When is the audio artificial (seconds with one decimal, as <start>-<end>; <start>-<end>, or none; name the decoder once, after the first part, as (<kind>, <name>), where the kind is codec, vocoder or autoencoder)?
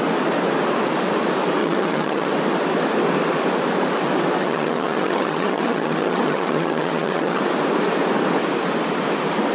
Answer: 1.6-2.3 (vocoder, HiFi-GAN); 4.4-7.4